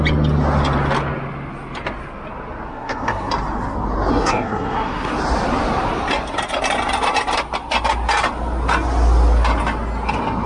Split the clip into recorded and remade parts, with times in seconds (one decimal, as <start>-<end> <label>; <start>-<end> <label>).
0.0-2.7 recorded; 2.7-3.3 remade; 3.3-4.1 recorded; 4.1-5.1 remade; 5.1-10.5 recorded